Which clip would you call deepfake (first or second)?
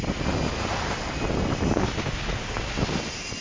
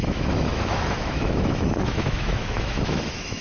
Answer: second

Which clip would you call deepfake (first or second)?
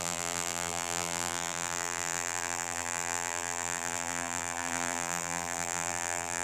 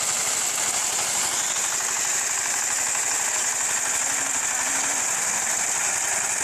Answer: first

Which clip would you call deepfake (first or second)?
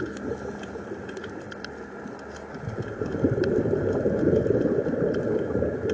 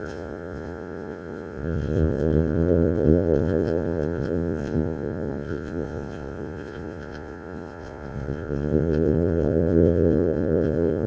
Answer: second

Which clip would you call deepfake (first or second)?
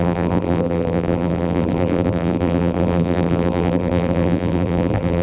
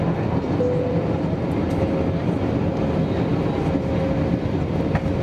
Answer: first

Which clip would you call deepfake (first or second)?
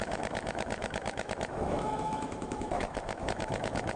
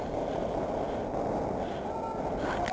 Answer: first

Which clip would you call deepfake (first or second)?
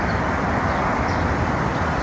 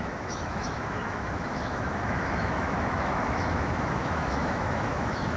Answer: second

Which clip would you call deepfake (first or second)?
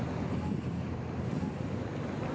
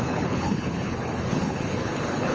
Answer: second